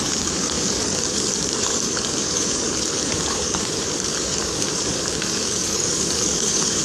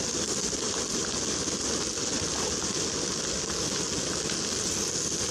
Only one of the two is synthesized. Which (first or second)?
first